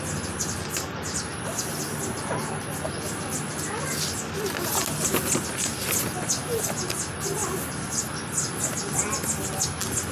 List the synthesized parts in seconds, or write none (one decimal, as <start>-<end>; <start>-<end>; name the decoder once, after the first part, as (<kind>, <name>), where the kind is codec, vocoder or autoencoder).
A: 1.3-2.0 (vocoder, BigVGAN v2)